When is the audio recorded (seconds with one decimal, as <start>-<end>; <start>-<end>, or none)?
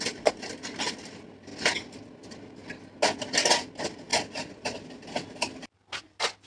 0.0-6.5